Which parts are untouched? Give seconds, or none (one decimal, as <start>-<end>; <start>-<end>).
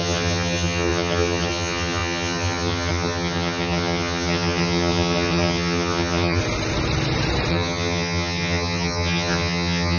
6.4-7.5